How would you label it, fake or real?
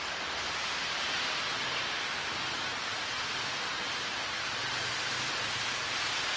real